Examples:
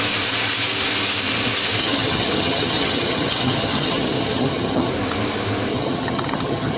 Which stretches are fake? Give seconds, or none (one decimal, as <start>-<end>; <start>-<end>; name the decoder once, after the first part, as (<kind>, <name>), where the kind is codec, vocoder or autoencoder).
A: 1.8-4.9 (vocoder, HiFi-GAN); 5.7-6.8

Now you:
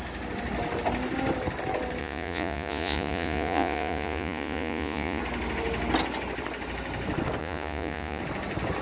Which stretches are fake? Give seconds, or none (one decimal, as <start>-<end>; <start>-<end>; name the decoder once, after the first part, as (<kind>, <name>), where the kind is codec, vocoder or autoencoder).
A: 2.0-5.2 (vocoder, Vocos); 7.4-8.2

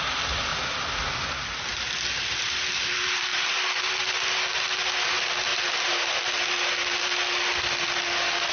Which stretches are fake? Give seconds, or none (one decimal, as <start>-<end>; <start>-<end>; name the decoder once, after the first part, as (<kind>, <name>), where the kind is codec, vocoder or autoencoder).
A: none

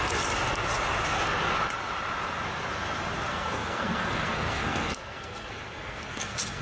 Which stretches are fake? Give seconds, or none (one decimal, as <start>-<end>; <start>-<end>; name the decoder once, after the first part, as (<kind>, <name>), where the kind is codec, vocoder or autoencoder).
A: 3.3-6.6 (codec, SNAC)

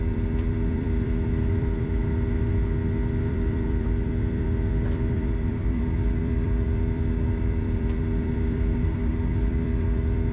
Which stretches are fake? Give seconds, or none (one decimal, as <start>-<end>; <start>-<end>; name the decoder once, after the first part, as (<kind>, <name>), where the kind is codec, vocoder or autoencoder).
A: 0.0-2.0 (vocoder, BigVGAN v2); 3.3-10.3

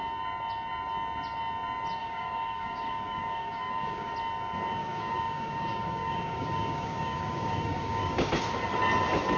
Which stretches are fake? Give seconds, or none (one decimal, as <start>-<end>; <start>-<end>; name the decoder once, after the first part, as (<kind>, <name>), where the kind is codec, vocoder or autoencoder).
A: 2.0-4.1 (codec, DAC); 4.8-8.3

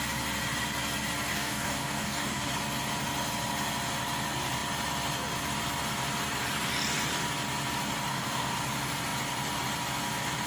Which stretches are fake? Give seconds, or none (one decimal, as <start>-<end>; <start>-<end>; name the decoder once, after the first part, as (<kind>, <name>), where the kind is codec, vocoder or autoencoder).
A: 1.3-2.5 (codec, DAC); 8.1-8.6

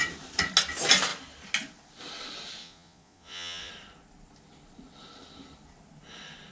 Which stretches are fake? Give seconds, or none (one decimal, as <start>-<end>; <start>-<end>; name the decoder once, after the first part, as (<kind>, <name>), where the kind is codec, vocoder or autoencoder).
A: 2.6-3.7 (vocoder, Vocos)